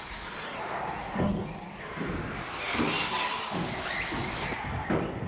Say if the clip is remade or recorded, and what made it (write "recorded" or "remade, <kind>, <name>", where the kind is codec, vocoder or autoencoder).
recorded